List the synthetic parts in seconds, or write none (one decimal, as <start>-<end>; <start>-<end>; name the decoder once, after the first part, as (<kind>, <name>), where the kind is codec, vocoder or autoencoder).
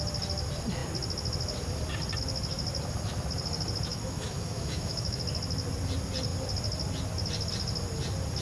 3.9-5.2 (autoencoder, DAC-VAE)